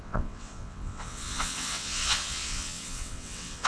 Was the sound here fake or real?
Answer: fake